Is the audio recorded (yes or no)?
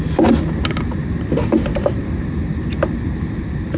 yes